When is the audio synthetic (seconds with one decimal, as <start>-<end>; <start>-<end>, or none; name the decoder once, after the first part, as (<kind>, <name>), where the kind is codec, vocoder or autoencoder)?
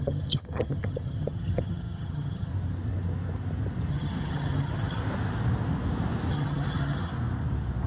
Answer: 0.0-2.5 (vocoder, HiFi-GAN); 3.9-5.0; 6.3-7.1